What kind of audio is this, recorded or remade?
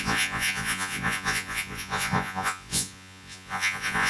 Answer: remade